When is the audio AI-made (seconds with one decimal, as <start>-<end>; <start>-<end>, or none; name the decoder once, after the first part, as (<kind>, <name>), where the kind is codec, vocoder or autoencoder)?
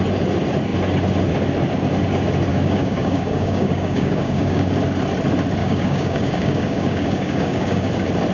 2.5-4.8 (codec, DAC); 5.6-7.9